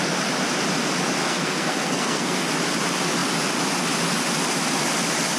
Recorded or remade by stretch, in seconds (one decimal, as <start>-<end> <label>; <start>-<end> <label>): 0.0-1.2 recorded; 1.2-2.5 remade; 2.5-5.4 recorded